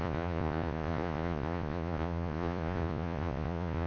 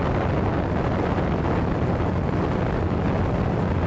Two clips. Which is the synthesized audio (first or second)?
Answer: first